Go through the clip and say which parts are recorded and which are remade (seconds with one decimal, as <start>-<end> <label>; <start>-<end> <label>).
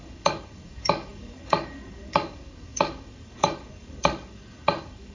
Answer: 0.0-5.1 remade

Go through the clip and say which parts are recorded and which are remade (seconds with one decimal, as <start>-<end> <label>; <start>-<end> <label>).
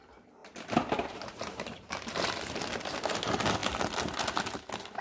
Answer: 0.0-0.4 recorded; 0.4-2.4 remade; 2.4-5.0 recorded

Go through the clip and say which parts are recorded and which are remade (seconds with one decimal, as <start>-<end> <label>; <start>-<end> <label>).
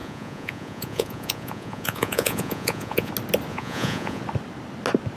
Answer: 0.0-3.1 remade; 3.1-3.5 recorded; 3.5-4.2 remade; 4.2-5.2 recorded